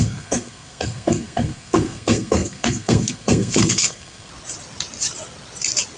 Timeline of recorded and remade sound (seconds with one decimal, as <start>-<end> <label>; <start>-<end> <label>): 0.0-4.3 remade; 4.3-6.0 recorded